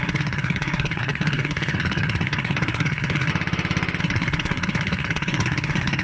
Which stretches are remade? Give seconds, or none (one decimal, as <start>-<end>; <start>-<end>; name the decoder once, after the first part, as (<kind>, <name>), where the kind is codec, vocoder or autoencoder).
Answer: 0.0-3.3 (codec, SNAC); 4.0-6.0